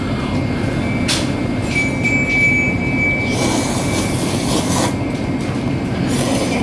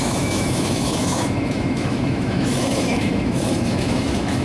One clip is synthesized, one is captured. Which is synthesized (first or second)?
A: second